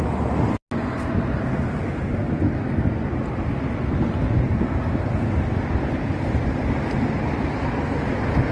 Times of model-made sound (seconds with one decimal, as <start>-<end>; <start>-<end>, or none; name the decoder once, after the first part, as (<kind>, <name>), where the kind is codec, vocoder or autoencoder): none